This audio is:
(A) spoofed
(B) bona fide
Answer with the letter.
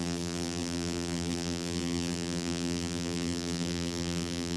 A